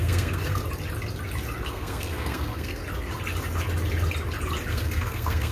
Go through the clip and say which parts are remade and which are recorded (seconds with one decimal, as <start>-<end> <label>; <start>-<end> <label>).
0.0-0.6 remade; 0.6-1.7 recorded; 1.7-2.8 remade; 2.8-4.7 recorded; 4.7-5.5 remade